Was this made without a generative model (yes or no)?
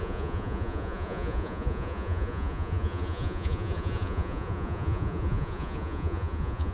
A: no